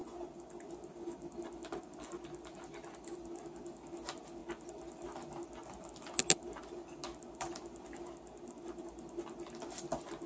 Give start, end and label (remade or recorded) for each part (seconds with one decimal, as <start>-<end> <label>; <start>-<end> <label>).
0.0-10.3 recorded